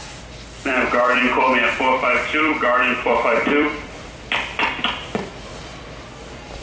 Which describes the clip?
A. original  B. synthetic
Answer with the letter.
B